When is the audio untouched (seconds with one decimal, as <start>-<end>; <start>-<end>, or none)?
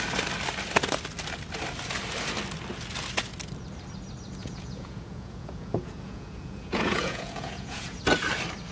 0.0-4.4; 8.0-8.7